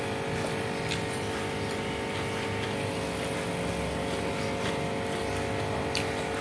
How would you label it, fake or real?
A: real